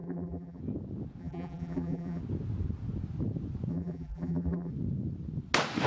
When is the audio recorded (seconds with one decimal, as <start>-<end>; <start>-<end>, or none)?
0.6-1.2; 2.2-3.7; 4.7-5.9